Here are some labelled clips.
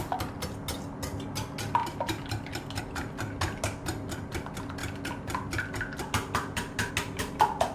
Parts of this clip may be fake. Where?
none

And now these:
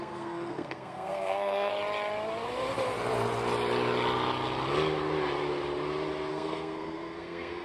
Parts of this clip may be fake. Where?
0.0-1.7; 6.3-7.6

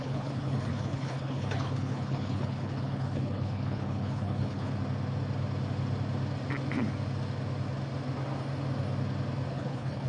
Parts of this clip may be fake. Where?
0.0-4.7; 9.5-10.1

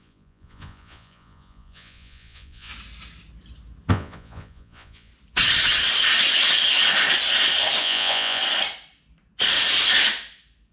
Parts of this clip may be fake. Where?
0.0-2.7; 3.9-5.1; 7.8-8.4

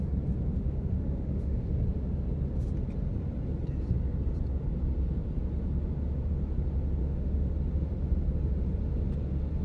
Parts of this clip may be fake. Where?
0.5-1.7; 7.0-7.5

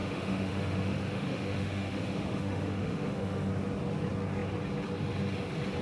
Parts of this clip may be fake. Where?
0.0-3.5

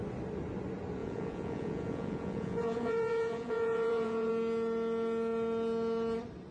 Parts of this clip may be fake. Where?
1.0-4.3

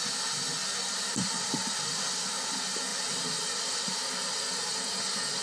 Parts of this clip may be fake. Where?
0.6-1.9; 2.9-4.3